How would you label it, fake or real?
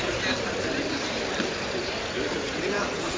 fake